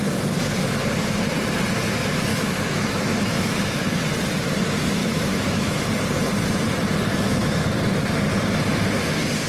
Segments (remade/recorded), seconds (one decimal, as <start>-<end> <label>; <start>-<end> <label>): 0.0-2.3 recorded; 2.3-4.1 remade; 4.1-5.0 recorded; 5.0-5.7 remade; 5.7-7.1 recorded; 7.1-7.7 remade; 7.7-9.5 recorded